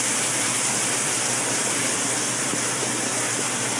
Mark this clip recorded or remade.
remade